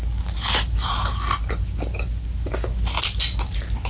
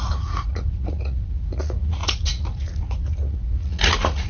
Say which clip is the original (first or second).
first